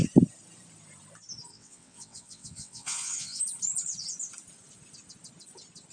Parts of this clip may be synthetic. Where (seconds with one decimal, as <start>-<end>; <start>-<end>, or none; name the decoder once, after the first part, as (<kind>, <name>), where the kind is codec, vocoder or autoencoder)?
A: 1.5-3.4 (vocoder, WaveNeXt)